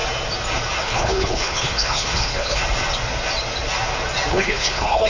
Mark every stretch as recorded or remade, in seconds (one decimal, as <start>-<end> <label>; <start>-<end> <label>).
0.0-0.8 recorded; 0.8-2.6 remade; 2.6-4.3 recorded; 4.3-5.1 remade